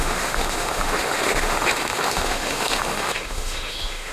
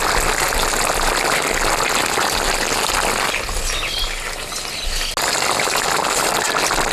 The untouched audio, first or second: second